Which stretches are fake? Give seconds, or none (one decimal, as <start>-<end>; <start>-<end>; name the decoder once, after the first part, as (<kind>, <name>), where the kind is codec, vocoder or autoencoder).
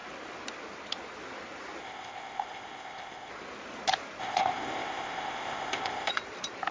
1.8-3.3 (codec, ZipCodec); 4.2-6.1